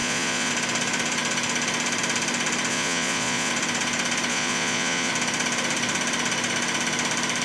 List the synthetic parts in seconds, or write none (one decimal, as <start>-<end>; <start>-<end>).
0.0-0.5; 2.7-3.5; 4.3-5.1